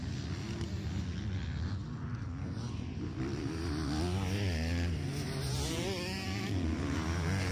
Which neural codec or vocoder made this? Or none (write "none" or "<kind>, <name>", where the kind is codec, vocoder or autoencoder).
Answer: none